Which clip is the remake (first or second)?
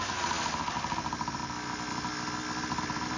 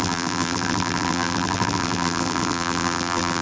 second